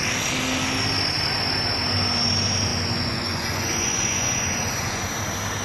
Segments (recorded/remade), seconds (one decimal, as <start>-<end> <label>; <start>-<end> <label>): 0.0-2.7 recorded; 2.7-5.0 remade; 5.0-5.6 recorded